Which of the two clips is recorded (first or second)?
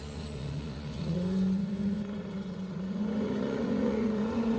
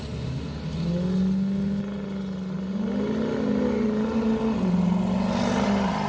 second